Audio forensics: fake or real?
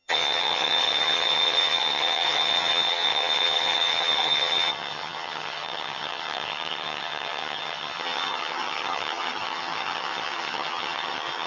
fake